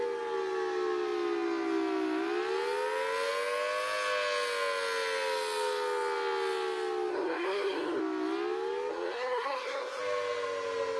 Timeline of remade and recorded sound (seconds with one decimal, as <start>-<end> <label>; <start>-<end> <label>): 0.0-7.1 recorded; 7.1-8.0 remade; 8.0-8.9 recorded; 8.9-10.0 remade; 10.0-11.0 recorded